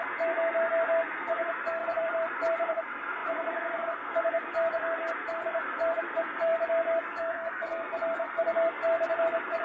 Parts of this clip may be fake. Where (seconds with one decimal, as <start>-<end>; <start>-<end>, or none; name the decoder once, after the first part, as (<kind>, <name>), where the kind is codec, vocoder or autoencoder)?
1.8-2.8 (vocoder, BigVGAN v2)